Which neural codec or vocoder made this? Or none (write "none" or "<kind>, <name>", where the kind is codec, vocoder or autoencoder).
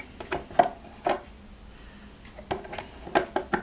none